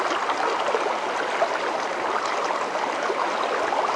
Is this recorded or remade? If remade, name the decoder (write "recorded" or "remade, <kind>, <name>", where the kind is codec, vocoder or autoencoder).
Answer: recorded